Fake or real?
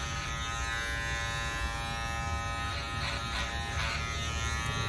real